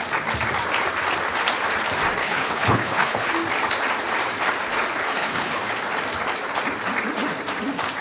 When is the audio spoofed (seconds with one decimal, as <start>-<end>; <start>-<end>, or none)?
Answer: 2.2-3.3; 5.0-5.7